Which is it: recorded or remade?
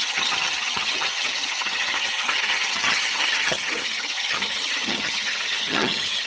remade